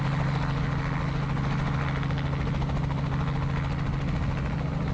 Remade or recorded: recorded